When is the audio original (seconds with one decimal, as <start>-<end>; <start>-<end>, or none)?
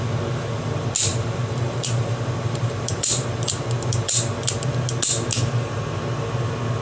0.0-1.1; 4.2-6.8